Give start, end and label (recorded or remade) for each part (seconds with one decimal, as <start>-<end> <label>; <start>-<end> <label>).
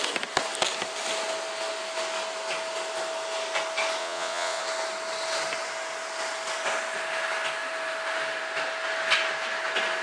0.0-4.0 recorded; 4.0-4.6 remade; 4.6-10.0 recorded